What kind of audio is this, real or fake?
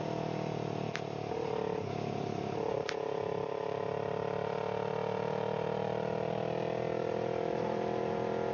real